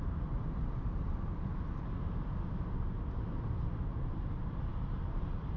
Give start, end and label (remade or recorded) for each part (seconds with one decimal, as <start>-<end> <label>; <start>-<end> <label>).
0.0-5.6 recorded